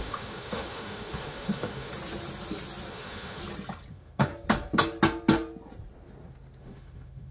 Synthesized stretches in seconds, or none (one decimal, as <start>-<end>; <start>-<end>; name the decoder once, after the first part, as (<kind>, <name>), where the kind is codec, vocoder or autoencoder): 0.0-1.9 (autoencoder, DAC-VAE); 2.9-3.4; 3.9-4.3; 6.6-7.3